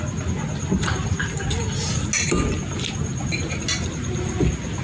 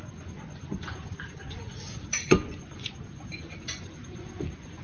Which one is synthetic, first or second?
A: second